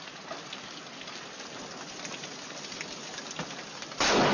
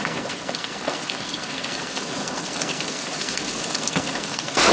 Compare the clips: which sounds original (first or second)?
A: first